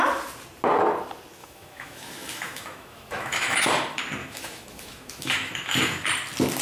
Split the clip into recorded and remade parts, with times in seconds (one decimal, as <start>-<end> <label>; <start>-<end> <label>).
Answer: 0.0-1.4 recorded; 1.4-3.7 remade; 3.7-4.2 recorded; 4.2-6.1 remade; 6.1-6.6 recorded